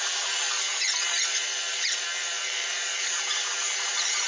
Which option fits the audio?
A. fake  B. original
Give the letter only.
A